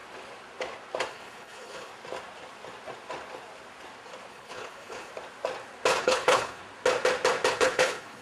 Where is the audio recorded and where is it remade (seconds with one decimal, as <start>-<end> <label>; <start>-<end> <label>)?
0.0-1.1 recorded; 1.1-1.9 remade; 1.9-4.3 recorded; 4.3-5.1 remade; 5.1-6.0 recorded; 6.0-6.6 remade; 6.6-7.5 recorded; 7.5-8.2 remade